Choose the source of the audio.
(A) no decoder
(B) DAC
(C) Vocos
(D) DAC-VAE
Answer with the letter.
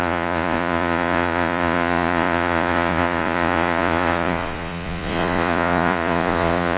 C